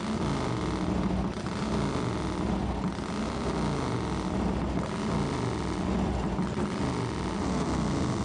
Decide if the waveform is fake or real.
real